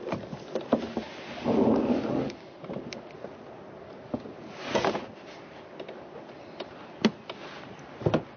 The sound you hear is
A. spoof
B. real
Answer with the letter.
B